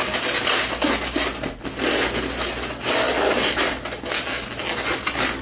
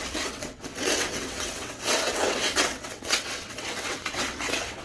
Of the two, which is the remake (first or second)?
second